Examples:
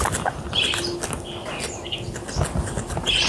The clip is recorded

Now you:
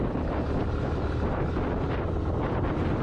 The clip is remade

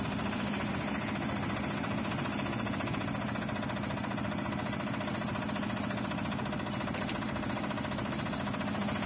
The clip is recorded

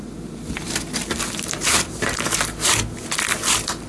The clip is recorded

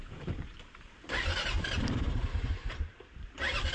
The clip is remade